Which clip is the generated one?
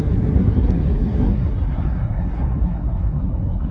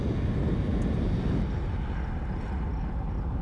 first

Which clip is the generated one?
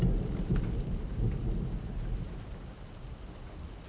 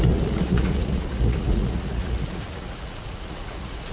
second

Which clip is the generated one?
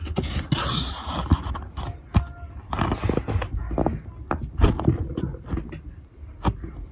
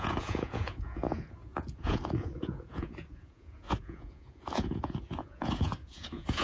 second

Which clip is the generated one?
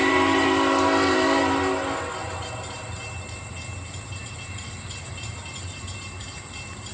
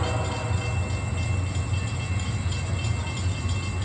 first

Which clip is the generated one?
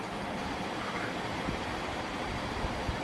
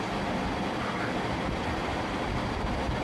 first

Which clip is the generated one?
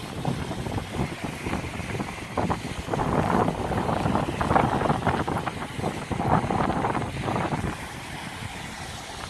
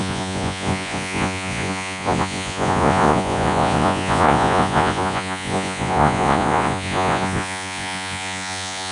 second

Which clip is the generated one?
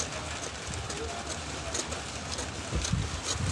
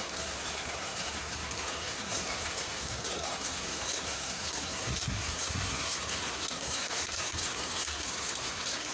second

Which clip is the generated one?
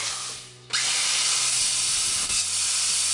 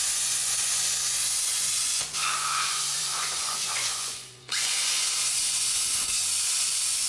second